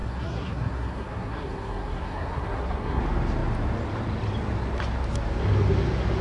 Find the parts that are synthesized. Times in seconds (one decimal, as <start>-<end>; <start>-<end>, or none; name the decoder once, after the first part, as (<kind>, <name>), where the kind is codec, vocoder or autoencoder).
0.0-3.0 (codec, SNAC)